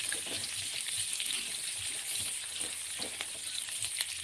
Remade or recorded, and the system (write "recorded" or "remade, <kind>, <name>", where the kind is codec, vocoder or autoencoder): remade, vocoder, BigVGAN v2